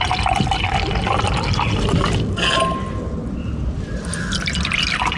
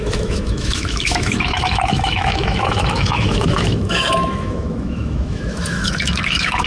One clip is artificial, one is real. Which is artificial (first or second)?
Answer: second